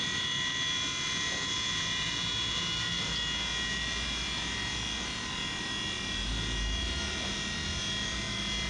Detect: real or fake real